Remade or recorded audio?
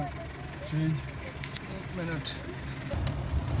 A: recorded